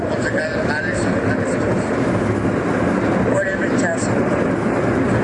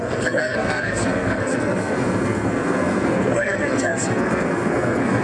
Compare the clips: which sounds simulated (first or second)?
second